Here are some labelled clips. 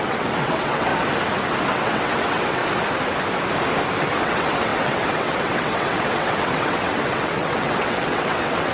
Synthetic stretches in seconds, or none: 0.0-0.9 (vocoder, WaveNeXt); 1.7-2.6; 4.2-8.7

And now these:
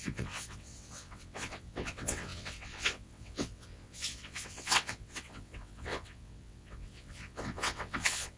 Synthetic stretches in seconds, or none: 0.0-8.4 (vocoder, WaveNeXt)

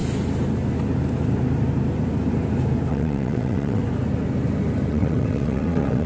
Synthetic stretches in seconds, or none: 2.9-3.8 (vocoder, WaveNeXt); 4.9-6.1